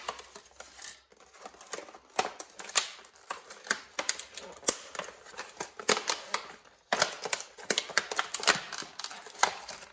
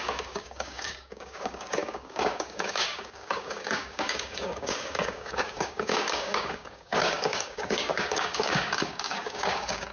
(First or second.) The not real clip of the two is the second